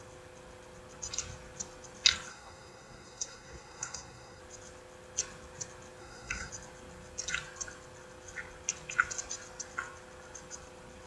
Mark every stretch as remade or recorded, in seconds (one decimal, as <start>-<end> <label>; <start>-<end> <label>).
0.0-2.3 recorded; 2.3-4.4 remade; 4.4-6.0 recorded; 6.0-6.5 remade; 6.5-11.1 recorded

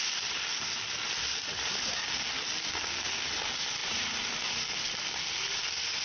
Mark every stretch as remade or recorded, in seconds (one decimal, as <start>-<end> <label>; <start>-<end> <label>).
0.0-2.0 remade; 2.0-3.8 recorded; 3.8-5.4 remade; 5.4-6.0 recorded